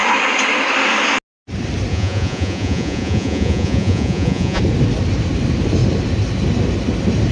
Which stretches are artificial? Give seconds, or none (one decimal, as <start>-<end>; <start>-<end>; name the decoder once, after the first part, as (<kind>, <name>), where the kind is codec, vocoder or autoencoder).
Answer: 1.9-4.6 (vocoder, Vocos)